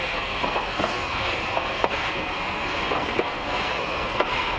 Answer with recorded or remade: remade